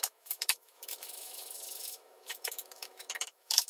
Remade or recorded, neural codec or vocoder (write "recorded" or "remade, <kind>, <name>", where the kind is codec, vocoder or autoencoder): remade, autoencoder, DAC-VAE